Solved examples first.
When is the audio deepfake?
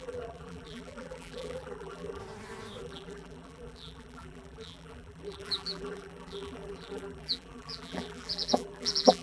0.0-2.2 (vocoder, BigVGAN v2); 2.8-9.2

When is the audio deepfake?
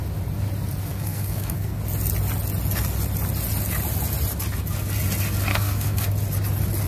0.8-1.8 (codec, SNAC); 5.5-6.1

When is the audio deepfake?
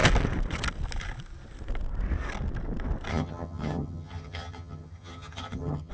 3.1-5.9 (vocoder, HiFi-GAN)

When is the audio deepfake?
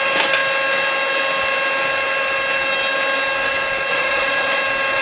3.9-4.6 (vocoder, Vocos)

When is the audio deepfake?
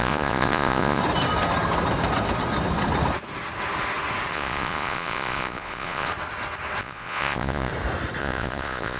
0.0-1.0 (vocoder, Vocos); 4.3-6.1; 6.8-7.7; 8.2-9.0